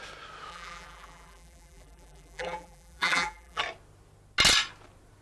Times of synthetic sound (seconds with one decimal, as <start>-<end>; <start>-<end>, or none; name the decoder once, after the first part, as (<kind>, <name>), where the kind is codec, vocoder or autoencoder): 0.5-3.6 (vocoder, BigVGAN v2)